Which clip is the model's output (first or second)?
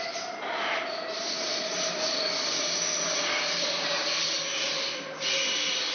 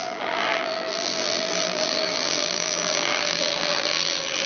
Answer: second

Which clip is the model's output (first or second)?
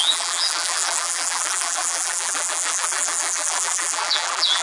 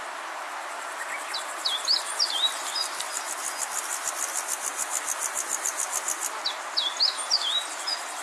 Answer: first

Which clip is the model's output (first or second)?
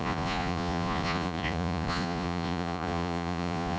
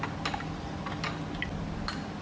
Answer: first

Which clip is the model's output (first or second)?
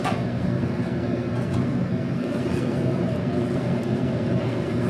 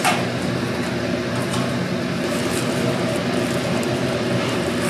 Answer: first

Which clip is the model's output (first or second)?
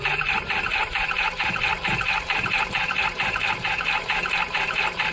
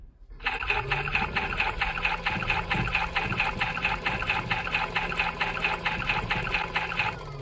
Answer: first